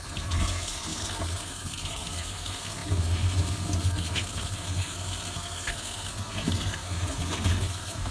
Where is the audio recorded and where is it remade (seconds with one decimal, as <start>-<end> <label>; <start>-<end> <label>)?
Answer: 0.0-8.1 remade